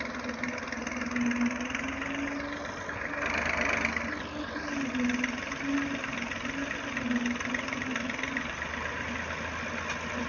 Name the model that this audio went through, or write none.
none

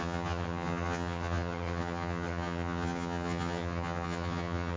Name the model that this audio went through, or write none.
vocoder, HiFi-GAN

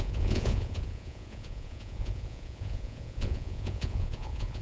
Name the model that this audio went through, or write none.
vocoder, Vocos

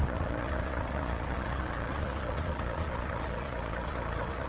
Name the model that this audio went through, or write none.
vocoder, Vocos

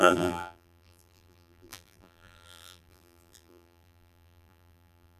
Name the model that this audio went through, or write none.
vocoder, BigVGAN v2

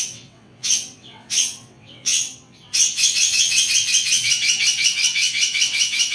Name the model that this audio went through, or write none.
vocoder, WaveNeXt